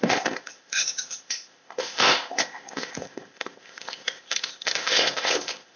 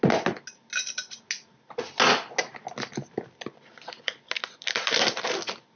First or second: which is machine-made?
first